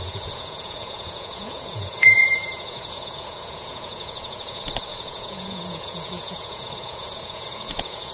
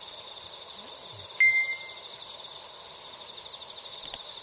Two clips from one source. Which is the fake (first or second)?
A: first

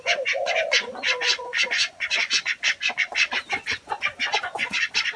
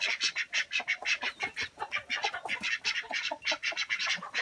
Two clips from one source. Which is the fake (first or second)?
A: first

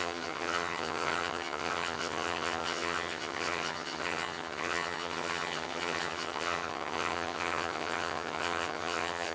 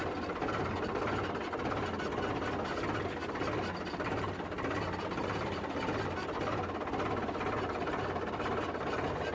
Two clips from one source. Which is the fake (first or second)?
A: first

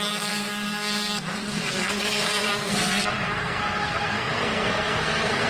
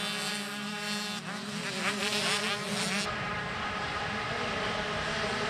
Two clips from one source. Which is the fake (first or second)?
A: first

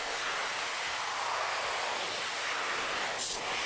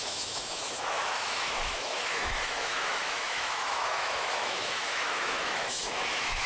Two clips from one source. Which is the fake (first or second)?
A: second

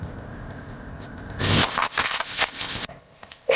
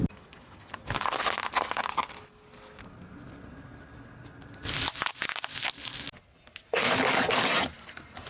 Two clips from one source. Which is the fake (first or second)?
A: first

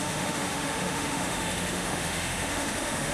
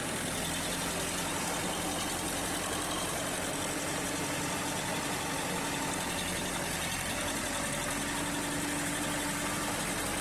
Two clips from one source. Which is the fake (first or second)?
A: first